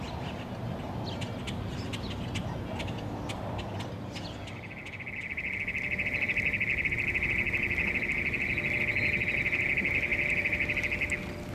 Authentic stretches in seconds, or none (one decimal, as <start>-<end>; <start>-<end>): 0.0-11.5